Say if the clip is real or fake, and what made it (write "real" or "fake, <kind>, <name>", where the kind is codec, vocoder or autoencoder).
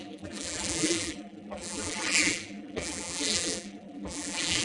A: fake, vocoder, BigVGAN v2